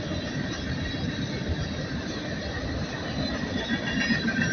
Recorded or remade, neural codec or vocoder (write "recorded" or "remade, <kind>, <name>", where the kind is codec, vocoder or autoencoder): recorded